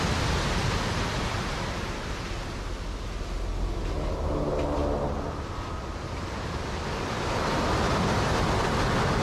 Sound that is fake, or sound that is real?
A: real